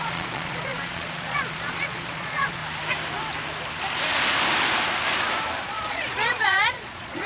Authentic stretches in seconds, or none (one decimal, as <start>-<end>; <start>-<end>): 2.6-5.6